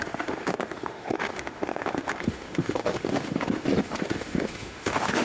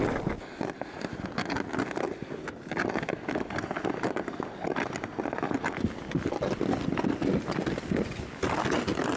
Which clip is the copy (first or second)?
first